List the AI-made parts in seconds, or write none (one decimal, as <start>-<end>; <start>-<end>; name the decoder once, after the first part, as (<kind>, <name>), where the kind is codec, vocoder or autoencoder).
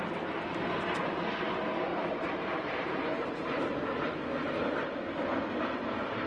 1.9-4.2 (vocoder, BigVGAN v2)